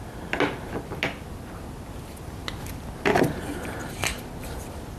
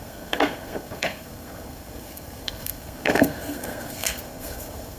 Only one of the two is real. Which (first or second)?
first